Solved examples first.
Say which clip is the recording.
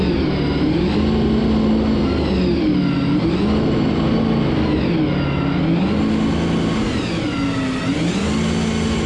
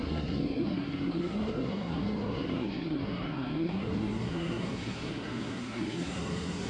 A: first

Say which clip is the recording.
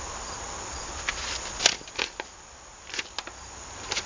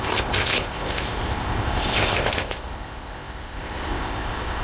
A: first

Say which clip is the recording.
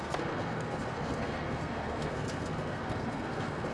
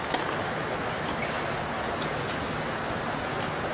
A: second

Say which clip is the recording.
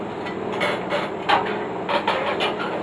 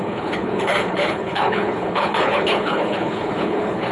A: first